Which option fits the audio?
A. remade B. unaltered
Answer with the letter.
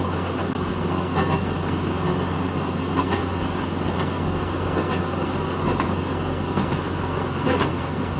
A